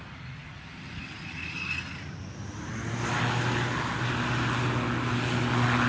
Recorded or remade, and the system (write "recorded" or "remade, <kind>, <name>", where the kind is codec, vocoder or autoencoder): recorded